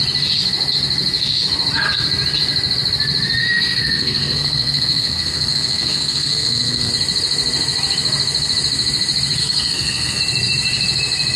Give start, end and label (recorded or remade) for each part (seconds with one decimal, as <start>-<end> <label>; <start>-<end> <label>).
0.0-3.4 recorded; 3.4-6.9 remade; 6.9-9.4 recorded; 9.4-10.2 remade; 10.2-11.4 recorded